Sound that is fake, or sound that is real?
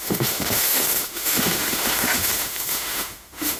fake